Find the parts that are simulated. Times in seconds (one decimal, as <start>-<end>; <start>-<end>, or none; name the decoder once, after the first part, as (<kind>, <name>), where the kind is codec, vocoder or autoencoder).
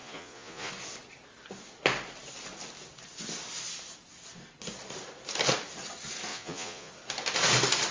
0.0-0.7 (vocoder, Vocos); 6.3-6.9